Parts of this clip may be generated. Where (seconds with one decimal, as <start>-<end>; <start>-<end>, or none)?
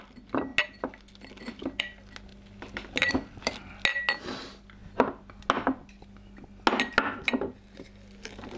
none